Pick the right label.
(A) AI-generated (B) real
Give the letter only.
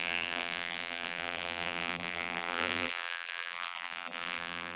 A